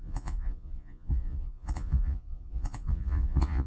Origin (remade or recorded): remade